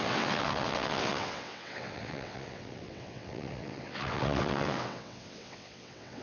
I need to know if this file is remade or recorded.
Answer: remade